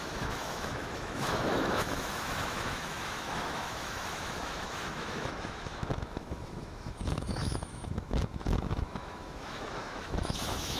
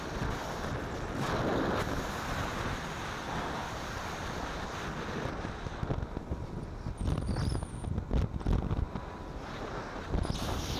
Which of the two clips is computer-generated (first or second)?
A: first